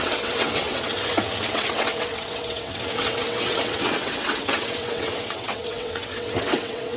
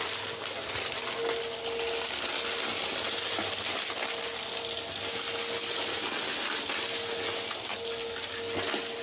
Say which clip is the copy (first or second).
first